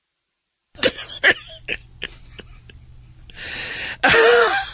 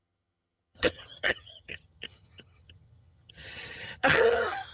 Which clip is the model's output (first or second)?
second